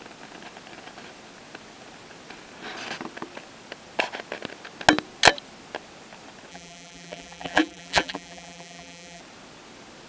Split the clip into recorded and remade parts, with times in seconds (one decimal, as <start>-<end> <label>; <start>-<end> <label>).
0.0-6.5 recorded; 6.5-9.2 remade; 9.2-10.1 recorded